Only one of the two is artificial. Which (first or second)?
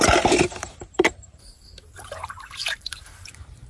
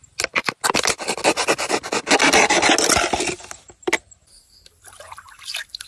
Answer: first